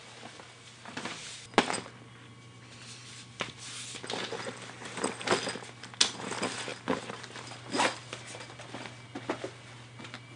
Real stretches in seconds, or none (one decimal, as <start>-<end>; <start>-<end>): 0.0-10.4